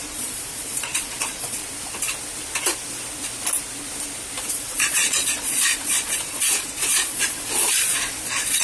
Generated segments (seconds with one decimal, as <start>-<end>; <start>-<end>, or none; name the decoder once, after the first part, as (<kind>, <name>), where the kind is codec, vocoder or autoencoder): 0.0-1.6 (vocoder, Vocos); 4.4-8.6